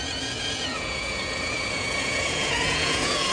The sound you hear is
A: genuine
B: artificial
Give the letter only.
B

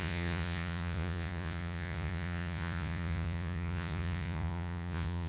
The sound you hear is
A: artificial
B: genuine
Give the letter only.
A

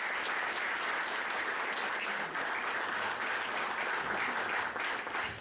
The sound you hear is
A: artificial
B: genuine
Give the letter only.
B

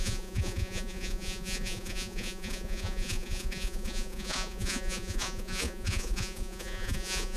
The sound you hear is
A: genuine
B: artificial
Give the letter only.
B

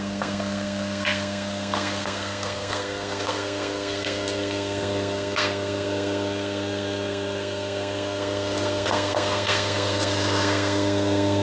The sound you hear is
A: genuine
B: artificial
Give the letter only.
B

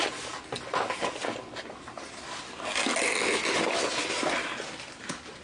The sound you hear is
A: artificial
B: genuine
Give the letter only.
B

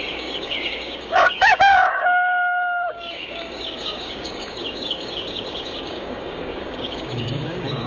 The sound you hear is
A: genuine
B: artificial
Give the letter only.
B